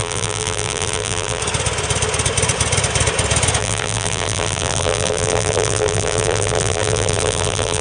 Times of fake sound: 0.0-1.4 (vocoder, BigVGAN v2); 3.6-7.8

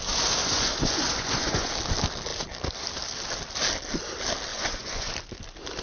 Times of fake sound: 0.4-1.7 (vocoder, Vocos); 4.5-5.1

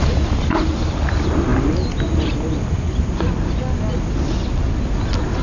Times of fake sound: none

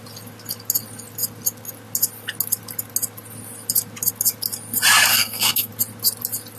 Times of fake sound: 5.1-5.7 (codec, SNAC)

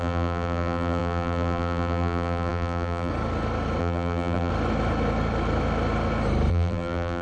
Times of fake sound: 0.0-3.1 (vocoder, BigVGAN v2); 3.8-4.5; 6.5-7.2

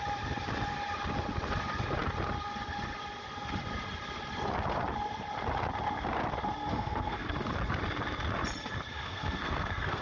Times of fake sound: 6.7-7.3 (codec, SNAC); 8.9-10.0

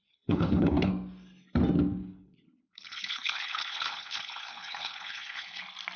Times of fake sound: 0.0-0.9 (codec, HILCodec); 2.0-5.6